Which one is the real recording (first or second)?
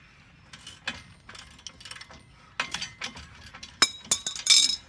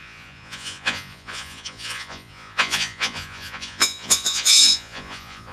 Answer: first